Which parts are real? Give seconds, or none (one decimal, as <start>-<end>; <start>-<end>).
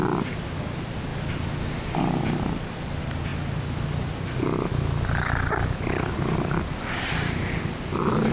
0.0-8.3